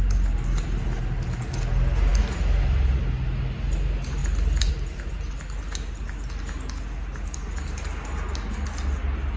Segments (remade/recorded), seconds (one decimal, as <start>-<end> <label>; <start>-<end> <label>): 0.0-4.2 recorded; 4.2-4.7 remade; 4.7-9.4 recorded